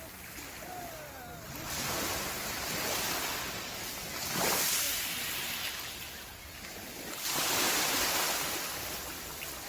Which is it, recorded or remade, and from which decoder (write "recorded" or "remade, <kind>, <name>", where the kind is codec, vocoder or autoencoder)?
recorded